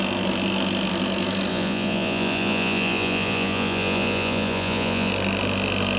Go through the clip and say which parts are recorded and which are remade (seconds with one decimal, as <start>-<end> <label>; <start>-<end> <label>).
0.0-1.5 recorded; 1.5-5.1 remade; 5.1-6.0 recorded